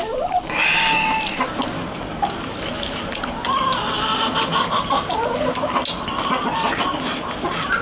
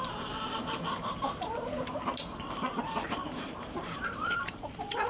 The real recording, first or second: first